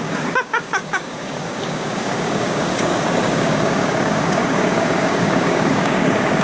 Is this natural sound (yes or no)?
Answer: no